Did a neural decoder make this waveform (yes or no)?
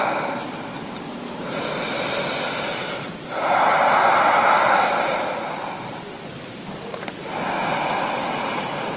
no